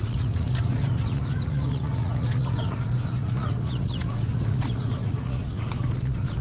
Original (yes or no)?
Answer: no